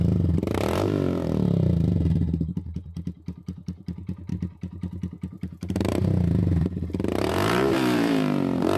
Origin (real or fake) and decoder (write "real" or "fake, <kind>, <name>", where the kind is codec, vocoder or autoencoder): fake, vocoder, BigVGAN v2